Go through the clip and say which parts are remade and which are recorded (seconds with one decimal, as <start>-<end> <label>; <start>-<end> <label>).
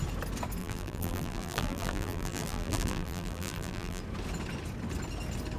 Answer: 0.0-0.6 recorded; 0.6-4.0 remade; 4.0-5.6 recorded